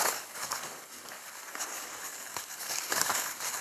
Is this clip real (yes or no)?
no